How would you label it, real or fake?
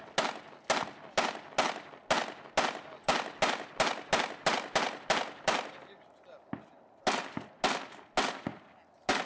real